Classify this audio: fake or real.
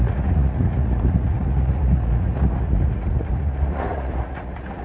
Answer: fake